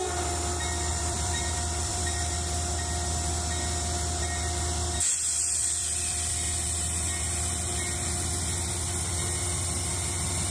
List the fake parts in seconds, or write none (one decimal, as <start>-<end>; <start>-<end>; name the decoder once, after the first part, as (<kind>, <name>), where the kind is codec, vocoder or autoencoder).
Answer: 0.9-2.3 (vocoder, BigVGAN v2); 5.6-6.3

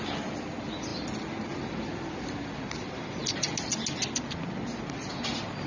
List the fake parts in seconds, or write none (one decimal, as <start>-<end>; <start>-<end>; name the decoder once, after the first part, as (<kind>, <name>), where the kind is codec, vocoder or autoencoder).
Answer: none

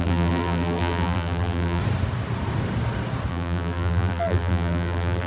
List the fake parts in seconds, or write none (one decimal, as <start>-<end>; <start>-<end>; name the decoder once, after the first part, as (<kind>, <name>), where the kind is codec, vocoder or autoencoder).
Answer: 0.0-1.8 (vocoder, BigVGAN v2); 3.3-5.3

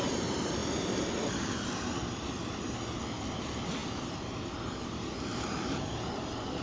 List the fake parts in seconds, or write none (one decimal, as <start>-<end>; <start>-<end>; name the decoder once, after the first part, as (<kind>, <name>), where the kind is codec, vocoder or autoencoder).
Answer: 0.6-3.4 (vocoder, BigVGAN v2); 5.3-6.6

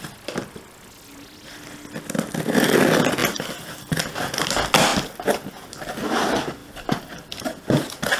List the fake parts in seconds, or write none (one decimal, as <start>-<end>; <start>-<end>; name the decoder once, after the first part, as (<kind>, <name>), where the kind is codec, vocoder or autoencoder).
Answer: 3.2-4.0 (vocoder, BigVGAN v2); 6.6-7.6

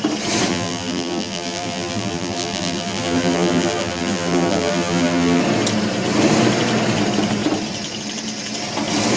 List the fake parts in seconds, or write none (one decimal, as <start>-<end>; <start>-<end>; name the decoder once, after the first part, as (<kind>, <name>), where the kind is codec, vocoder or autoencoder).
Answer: 0.5-5.4 (vocoder, BigVGAN v2)